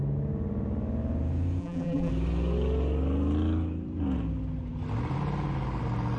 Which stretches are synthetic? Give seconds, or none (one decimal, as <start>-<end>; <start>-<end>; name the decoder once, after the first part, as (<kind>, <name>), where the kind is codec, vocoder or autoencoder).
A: 1.6-2.1 (vocoder, BigVGAN v2)